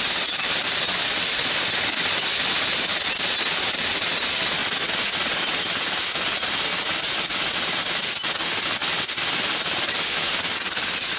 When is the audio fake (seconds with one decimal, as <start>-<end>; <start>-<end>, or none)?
0.0-2.9; 3.4-4.6; 5.1-11.2